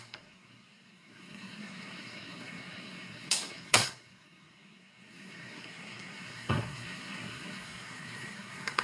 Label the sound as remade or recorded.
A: remade